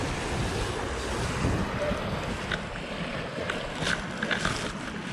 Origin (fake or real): real